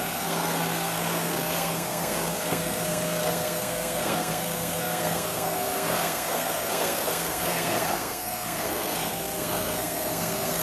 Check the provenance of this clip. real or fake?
fake